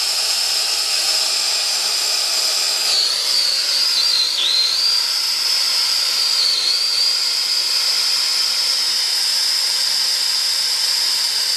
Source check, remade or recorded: recorded